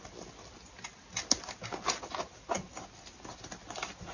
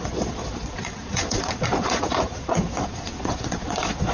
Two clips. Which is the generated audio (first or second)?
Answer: second